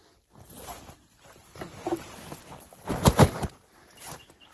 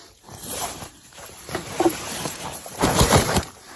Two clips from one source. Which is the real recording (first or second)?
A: first